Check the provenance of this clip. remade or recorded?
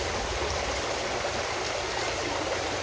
recorded